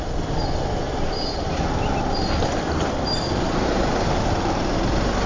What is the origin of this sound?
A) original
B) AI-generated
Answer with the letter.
A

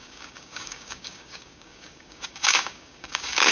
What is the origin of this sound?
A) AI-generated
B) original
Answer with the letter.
A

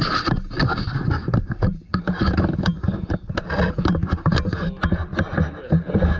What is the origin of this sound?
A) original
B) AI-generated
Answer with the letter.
A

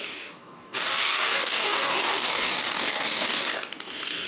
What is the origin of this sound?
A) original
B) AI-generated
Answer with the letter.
B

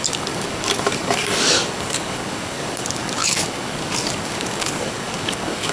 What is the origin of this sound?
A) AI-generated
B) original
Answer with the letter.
A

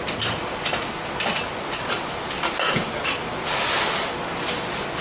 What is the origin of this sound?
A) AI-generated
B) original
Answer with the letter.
B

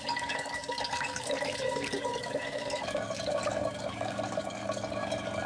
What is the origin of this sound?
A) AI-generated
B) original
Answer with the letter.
A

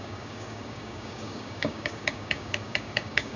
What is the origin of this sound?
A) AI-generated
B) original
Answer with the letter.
A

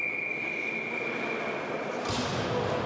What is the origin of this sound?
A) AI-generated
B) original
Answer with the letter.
B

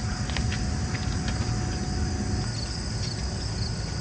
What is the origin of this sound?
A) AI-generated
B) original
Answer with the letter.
B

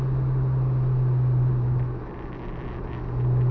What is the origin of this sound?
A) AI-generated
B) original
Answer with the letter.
B